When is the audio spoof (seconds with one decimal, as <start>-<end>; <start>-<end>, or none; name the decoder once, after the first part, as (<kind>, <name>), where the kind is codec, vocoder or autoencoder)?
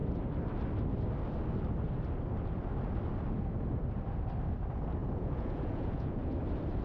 5.0-6.3 (vocoder, Vocos)